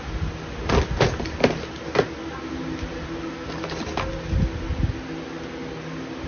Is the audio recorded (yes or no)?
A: yes